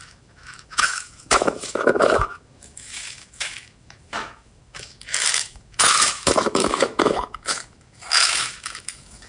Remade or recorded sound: remade